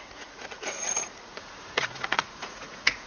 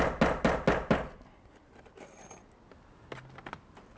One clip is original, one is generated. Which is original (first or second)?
second